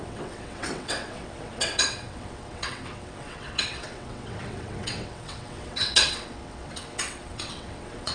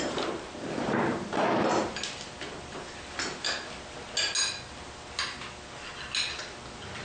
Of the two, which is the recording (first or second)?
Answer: second